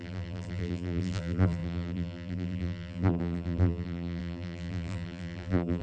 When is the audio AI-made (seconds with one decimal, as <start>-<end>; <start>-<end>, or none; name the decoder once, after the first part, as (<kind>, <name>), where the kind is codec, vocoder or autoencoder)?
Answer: 0.0-5.8 (vocoder, BigVGAN v2)